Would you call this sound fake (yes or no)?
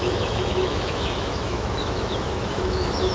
yes